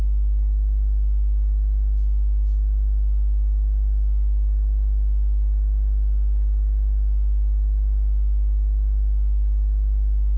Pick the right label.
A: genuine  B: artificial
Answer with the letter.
A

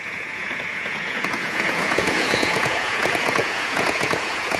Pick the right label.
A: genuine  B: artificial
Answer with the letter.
B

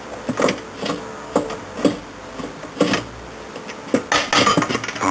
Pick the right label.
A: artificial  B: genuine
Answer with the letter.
B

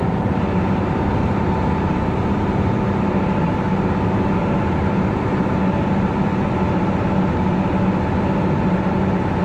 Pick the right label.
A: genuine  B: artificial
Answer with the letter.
B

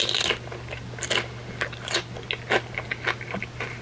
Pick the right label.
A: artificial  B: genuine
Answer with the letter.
B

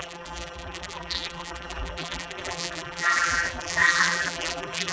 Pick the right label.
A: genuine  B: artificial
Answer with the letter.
B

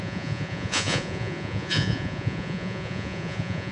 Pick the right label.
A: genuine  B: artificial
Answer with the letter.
B